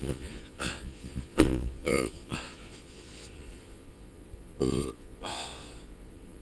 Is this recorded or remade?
remade